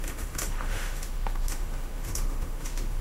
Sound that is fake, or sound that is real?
fake